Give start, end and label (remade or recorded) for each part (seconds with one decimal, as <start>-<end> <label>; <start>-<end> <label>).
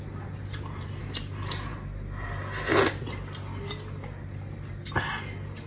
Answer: 0.0-5.7 recorded